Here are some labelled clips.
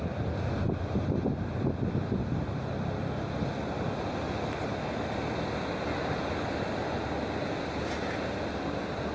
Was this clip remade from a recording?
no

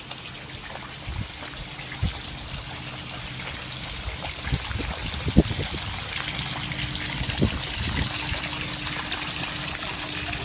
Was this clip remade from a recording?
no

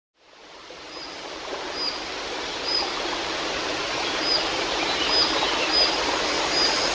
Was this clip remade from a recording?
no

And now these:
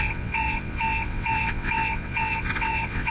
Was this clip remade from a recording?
yes